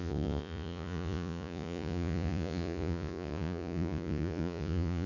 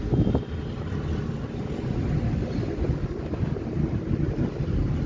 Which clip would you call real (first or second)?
second